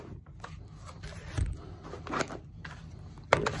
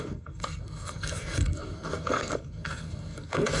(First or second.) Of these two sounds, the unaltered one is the first